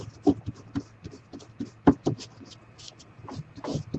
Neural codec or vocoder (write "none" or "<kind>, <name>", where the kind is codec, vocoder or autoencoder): vocoder, BigVGAN v2